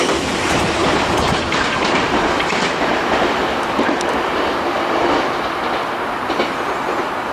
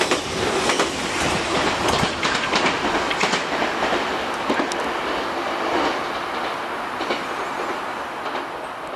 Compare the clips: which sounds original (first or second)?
second